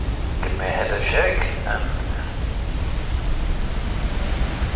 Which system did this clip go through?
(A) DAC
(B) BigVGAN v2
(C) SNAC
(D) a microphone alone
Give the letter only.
D